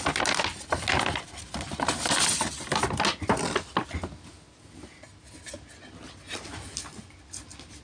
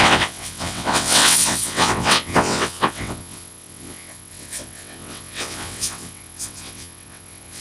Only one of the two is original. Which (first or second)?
first